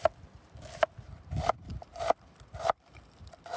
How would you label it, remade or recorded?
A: remade